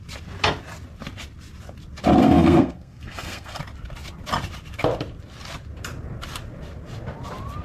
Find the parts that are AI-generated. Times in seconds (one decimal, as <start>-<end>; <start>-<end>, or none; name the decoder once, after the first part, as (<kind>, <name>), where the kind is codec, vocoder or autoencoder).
2.2-3.6 (codec, SNAC)